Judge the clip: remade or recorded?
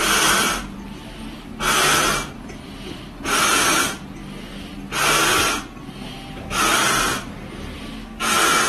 recorded